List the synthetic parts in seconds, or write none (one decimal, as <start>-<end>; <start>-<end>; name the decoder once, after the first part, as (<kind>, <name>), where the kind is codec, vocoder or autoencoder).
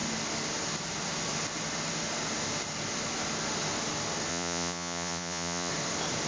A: 4.3-5.7 (vocoder, Vocos)